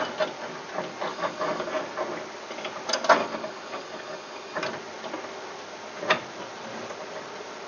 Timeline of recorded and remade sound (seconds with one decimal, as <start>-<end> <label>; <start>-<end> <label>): 0.0-1.1 recorded; 1.1-1.7 remade; 1.7-3.2 recorded; 3.2-4.6 remade; 4.6-7.7 recorded